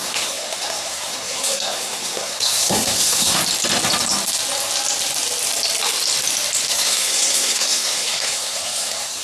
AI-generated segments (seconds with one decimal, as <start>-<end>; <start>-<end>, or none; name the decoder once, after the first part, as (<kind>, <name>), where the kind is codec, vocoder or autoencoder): 0.0-3.4 (codec, SNAC); 6.7-9.2